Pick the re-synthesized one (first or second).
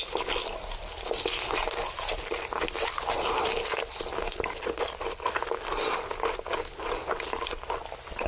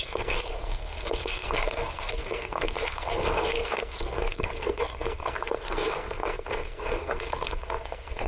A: second